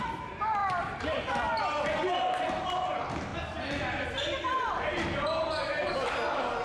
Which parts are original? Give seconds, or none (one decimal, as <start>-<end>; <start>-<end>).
0.0-0.6; 1.6-6.6